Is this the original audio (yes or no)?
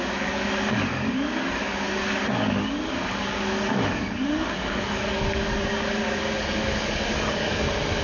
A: no